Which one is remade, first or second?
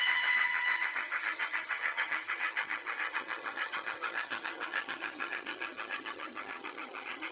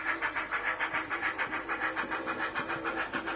first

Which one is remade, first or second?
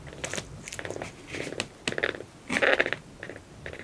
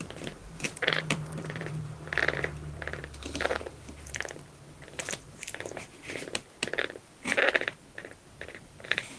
second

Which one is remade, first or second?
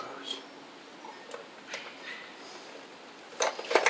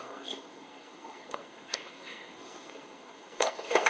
second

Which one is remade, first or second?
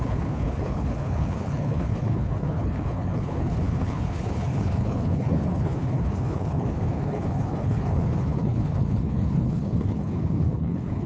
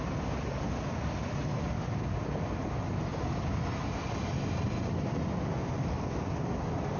first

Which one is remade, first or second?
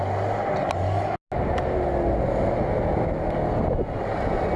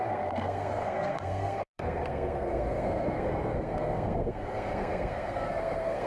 second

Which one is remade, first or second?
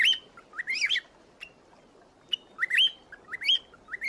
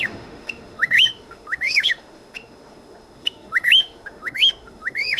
second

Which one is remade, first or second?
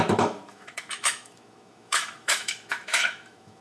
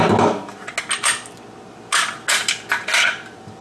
first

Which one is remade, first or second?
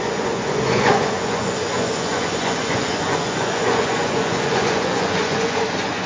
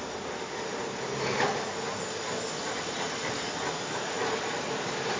first